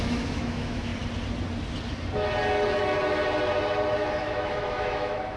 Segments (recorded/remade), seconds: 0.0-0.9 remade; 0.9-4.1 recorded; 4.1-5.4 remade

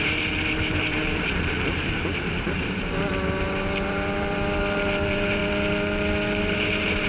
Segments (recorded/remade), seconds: 0.0-5.4 remade; 5.4-6.4 recorded; 6.4-7.1 remade

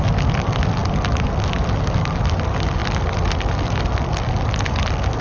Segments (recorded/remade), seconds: 0.0-5.2 recorded

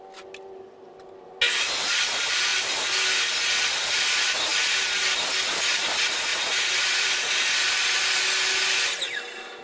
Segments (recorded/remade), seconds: 0.0-6.3 recorded; 6.3-7.3 remade; 7.3-9.6 recorded

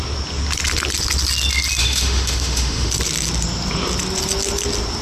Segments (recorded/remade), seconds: 0.0-1.8 recorded; 1.8-2.9 remade; 2.9-5.0 recorded

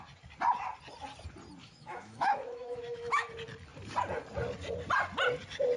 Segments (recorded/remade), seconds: 0.0-1.6 recorded; 1.6-3.3 remade; 3.3-5.8 recorded